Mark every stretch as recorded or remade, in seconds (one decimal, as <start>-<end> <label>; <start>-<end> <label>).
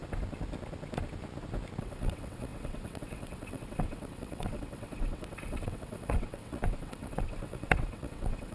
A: 0.0-1.8 recorded; 1.8-8.5 remade